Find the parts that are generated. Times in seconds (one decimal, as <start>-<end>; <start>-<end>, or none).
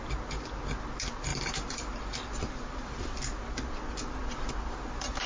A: none